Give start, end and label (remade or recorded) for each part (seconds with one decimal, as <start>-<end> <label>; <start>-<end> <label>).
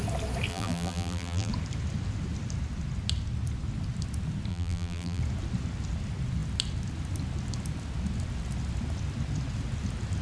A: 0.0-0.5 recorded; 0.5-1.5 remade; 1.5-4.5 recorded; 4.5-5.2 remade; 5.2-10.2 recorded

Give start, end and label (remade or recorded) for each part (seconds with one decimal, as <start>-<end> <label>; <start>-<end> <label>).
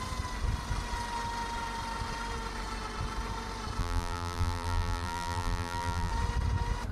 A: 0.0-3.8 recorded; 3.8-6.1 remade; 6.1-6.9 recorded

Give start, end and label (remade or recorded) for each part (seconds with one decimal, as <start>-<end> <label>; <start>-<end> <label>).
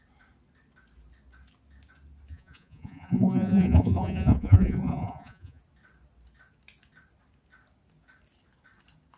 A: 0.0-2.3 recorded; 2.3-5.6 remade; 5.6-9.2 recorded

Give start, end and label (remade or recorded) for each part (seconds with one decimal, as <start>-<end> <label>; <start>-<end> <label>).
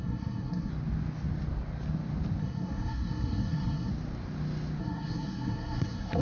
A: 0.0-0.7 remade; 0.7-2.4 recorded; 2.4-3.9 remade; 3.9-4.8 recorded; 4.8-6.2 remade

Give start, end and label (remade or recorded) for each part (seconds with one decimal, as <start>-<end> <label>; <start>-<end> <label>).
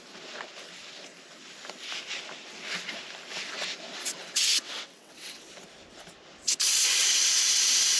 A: 0.0-4.0 recorded; 4.0-5.4 remade; 5.4-8.0 recorded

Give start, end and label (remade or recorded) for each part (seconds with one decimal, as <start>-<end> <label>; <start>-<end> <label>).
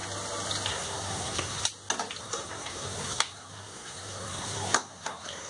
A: 0.0-0.7 recorded; 0.7-1.6 remade; 1.6-2.2 recorded; 2.2-5.5 remade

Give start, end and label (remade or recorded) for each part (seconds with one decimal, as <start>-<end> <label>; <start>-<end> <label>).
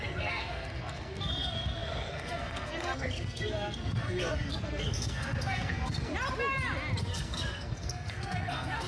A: 0.0-6.1 remade; 6.1-7.0 recorded; 7.0-8.9 remade